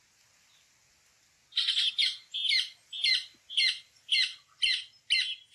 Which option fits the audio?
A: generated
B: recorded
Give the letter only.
B